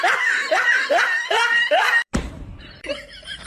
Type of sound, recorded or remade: remade